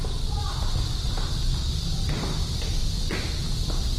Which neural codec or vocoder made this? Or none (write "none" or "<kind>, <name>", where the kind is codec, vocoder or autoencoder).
none